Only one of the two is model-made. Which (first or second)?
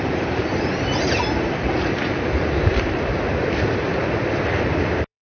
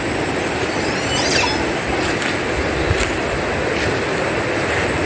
first